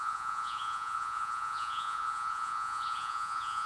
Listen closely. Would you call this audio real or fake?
fake